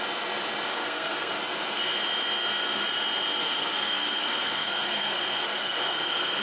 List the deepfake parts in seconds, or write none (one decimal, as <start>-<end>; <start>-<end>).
0.7-1.4; 3.4-6.4

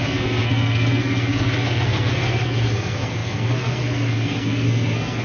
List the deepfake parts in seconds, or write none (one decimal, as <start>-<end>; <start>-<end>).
0.0-5.2